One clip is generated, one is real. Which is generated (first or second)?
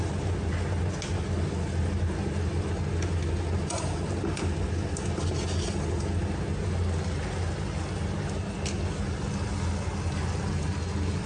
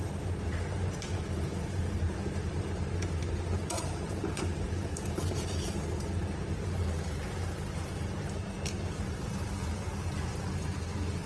second